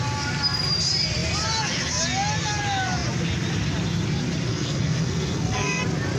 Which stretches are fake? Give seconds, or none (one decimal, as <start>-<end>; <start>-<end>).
4.5-5.8